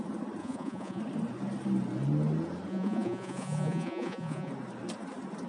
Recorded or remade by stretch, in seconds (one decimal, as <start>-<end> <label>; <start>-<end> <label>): 0.0-0.4 recorded; 0.4-1.0 remade; 1.0-2.7 recorded; 2.7-4.5 remade; 4.5-5.5 recorded